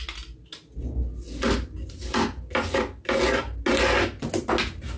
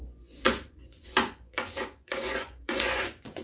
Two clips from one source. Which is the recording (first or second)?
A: first